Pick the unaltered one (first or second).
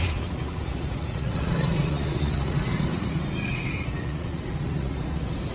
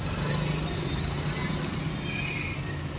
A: second